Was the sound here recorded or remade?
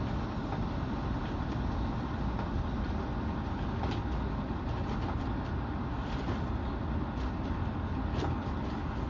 recorded